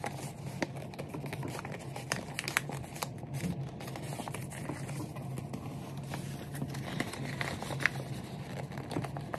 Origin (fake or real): real